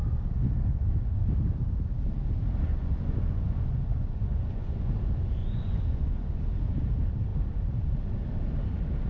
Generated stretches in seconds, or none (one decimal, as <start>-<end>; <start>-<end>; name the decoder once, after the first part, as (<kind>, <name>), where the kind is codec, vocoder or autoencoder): 2.7-4.9 (vocoder, Vocos); 5.4-6.4